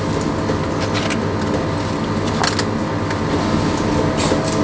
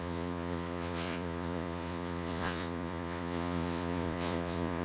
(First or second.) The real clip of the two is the first